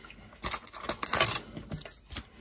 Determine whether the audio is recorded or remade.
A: recorded